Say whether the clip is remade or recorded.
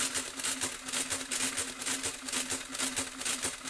recorded